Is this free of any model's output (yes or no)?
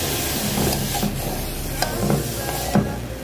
yes